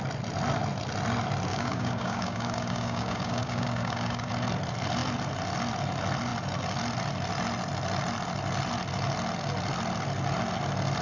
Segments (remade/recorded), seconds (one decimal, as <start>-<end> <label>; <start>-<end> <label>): 0.0-1.5 recorded; 1.5-4.3 remade; 4.3-11.0 recorded